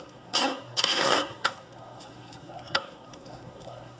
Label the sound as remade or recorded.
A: remade